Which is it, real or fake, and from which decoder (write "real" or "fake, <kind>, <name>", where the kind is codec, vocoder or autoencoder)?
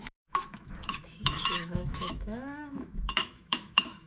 fake, autoencoder, DAC-VAE